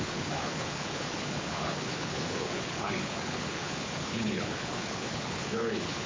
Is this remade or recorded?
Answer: remade